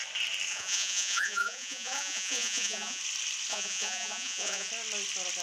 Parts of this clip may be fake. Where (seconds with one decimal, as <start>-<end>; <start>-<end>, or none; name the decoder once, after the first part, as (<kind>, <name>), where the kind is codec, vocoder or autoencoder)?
0.5-3.0 (vocoder, Vocos); 3.5-4.7